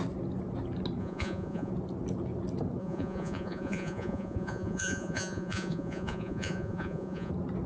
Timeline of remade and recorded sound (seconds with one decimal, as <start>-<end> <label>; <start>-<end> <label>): 0.0-1.0 recorded; 1.0-1.7 remade; 1.7-2.8 recorded; 2.8-7.3 remade; 7.3-7.7 recorded